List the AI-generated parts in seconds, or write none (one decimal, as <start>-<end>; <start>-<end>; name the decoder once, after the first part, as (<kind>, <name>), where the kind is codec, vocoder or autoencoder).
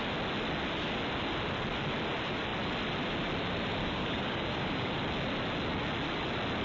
3.8-4.9 (codec, DAC)